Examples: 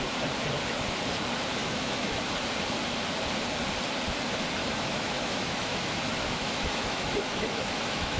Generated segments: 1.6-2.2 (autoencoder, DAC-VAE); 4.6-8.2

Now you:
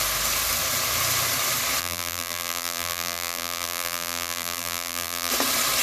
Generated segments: 1.8-5.3 (vocoder, BigVGAN v2)